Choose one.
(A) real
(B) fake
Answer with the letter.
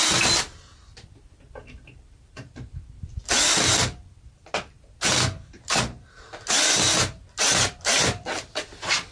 A